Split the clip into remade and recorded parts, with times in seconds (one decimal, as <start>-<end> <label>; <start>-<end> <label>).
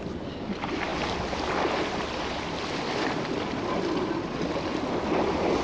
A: 0.0-5.6 recorded